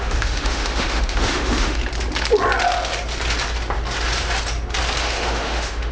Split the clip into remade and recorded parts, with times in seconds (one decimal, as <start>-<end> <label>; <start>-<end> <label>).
0.0-1.8 remade; 1.8-5.0 recorded; 5.0-5.9 remade